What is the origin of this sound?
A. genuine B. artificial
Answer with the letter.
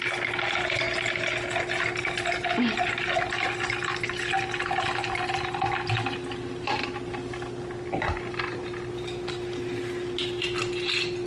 A